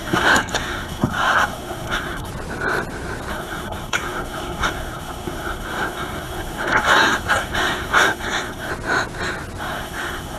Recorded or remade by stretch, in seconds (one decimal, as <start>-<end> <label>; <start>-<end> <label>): 0.0-2.3 remade; 2.3-3.3 recorded; 3.3-8.7 remade; 8.7-9.6 recorded; 9.6-10.4 remade